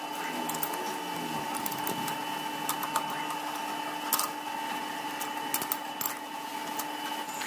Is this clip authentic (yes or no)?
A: yes